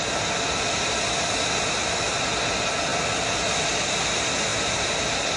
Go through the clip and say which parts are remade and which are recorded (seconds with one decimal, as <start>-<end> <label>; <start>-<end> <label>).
0.0-4.5 recorded; 4.5-5.4 remade